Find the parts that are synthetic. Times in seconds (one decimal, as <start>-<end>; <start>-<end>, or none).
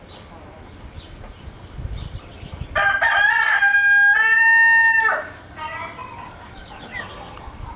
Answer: none